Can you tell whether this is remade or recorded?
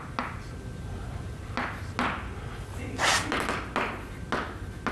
recorded